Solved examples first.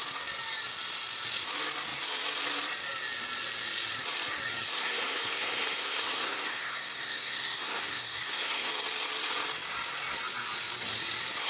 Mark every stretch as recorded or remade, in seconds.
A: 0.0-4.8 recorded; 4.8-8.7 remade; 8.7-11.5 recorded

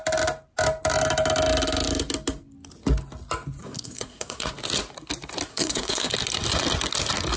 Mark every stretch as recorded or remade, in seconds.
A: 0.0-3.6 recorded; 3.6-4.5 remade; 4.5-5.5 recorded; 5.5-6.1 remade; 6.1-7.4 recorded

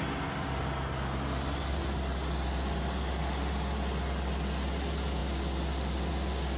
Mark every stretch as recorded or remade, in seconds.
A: 0.0-6.6 recorded

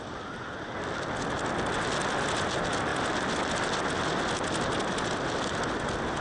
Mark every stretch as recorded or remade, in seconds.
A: 0.0-6.2 recorded